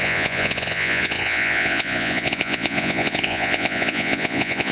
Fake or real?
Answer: fake